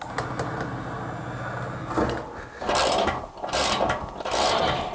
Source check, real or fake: real